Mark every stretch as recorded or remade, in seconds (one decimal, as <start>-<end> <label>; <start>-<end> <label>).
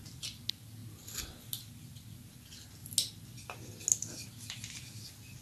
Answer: 0.0-5.4 recorded